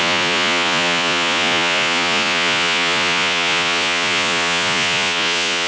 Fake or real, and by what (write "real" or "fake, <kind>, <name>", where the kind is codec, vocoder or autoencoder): fake, vocoder, Vocos